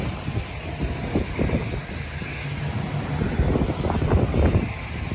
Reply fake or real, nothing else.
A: real